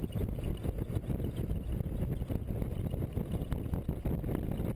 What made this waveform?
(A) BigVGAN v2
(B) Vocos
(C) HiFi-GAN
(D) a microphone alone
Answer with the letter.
D